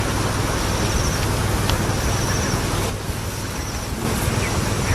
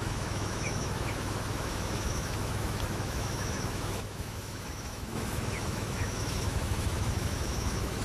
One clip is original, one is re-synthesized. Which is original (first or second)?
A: first